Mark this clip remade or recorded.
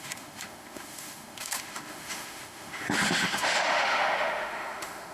remade